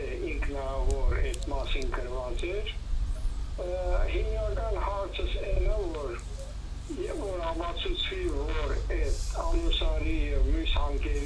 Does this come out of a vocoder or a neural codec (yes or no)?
no